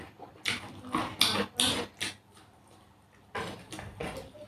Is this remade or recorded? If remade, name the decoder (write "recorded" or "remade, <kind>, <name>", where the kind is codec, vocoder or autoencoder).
recorded